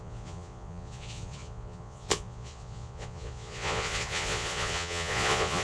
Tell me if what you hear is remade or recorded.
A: remade